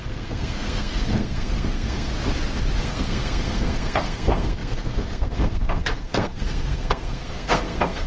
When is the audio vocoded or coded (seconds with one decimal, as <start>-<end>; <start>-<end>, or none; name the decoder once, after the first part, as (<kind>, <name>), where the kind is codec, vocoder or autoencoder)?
0.0-2.1 (codec, SNAC); 2.8-8.1

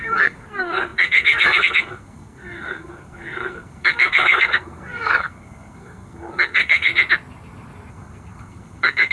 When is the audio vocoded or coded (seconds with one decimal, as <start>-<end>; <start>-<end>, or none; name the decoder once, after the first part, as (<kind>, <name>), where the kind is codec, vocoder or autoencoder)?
0.0-6.9 (codec, SNAC); 7.9-9.1

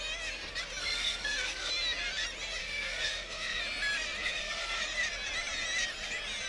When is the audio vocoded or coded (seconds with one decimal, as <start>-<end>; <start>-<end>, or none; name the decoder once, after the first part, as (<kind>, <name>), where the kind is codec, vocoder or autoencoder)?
0.8-1.7 (codec, SNAC); 2.6-3.6; 4.2-4.8

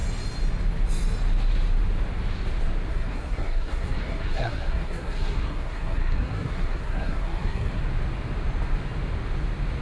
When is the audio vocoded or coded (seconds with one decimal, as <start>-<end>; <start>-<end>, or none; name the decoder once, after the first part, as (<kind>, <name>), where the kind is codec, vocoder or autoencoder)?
2.9-7.8 (codec, SNAC)

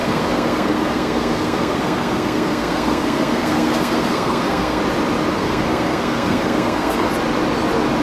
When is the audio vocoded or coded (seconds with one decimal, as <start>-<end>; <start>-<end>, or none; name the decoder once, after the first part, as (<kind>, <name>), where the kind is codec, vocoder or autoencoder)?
0.0-4.8 (codec, SNAC); 5.3-7.1

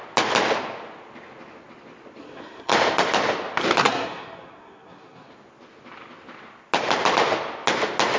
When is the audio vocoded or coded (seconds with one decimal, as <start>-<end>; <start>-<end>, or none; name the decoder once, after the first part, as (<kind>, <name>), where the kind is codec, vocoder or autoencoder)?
2.2-2.7 (codec, SNAC); 3.8-5.3

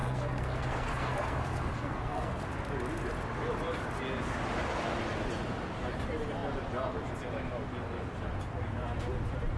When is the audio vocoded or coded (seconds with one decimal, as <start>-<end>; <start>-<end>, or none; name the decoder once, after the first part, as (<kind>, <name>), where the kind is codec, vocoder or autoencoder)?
0.0-2.4 (codec, SNAC)